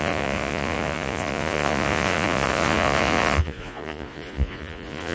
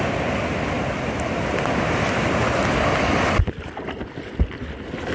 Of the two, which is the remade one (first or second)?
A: first